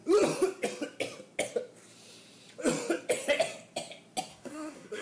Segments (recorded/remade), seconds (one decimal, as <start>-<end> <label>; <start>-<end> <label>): 0.0-4.3 recorded; 4.3-5.0 remade

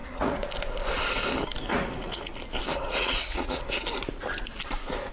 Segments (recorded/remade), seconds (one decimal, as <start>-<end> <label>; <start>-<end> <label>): 0.0-0.5 remade; 0.5-1.7 recorded; 1.7-2.3 remade; 2.3-2.7 recorded; 2.7-3.6 remade; 3.6-5.1 recorded

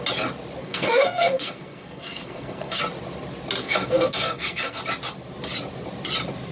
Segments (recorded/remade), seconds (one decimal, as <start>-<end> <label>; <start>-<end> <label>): 0.0-0.6 recorded; 0.6-2.8 remade; 2.8-3.6 recorded; 3.6-4.8 remade; 4.8-6.5 recorded

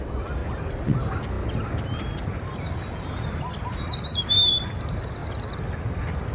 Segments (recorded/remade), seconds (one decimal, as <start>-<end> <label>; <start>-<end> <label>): 0.0-0.4 remade; 0.4-4.2 recorded; 4.2-5.2 remade; 5.2-6.3 recorded

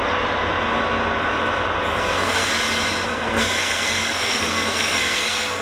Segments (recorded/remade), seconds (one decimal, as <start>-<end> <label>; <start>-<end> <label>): 0.0-1.9 recorded; 1.9-2.5 remade; 2.5-3.1 recorded; 3.1-5.6 remade

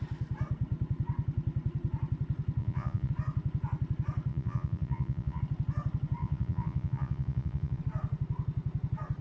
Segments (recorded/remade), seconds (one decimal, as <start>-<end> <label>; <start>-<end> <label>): 0.0-2.6 recorded; 2.6-3.1 remade; 3.1-4.3 recorded; 4.3-5.4 remade; 5.4-6.2 recorded; 6.2-7.8 remade; 7.8-9.2 recorded